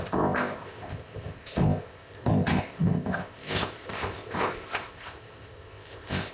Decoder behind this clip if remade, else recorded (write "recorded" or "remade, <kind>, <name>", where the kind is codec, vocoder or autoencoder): remade, codec, ZipCodec